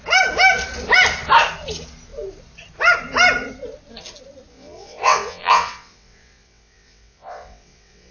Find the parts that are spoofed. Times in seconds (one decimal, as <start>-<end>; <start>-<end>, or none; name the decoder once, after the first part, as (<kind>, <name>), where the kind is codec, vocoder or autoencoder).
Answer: 4.5-8.1 (vocoder, WaveNeXt)